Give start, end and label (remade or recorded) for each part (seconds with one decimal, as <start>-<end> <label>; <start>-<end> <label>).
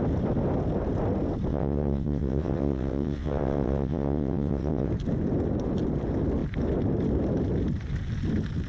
0.0-1.5 recorded; 1.5-4.9 remade; 4.9-8.7 recorded